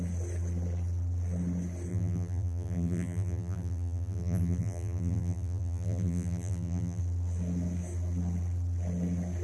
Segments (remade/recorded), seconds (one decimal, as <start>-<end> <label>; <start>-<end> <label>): 0.0-1.9 recorded; 1.9-7.0 remade; 7.0-9.4 recorded